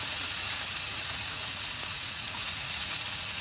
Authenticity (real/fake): fake